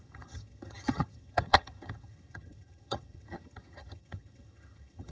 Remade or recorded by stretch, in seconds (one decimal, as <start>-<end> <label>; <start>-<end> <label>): 0.0-5.1 remade